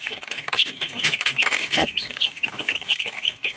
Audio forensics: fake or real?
fake